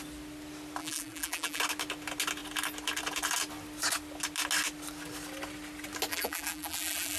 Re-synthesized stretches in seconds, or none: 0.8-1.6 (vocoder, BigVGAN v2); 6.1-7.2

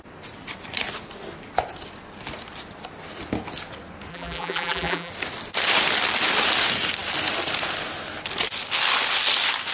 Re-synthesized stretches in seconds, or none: 4.1-5.1 (vocoder, BigVGAN v2)

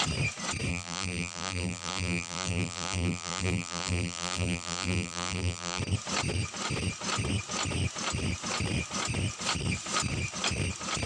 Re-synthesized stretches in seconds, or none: 0.7-5.8 (vocoder, BigVGAN v2)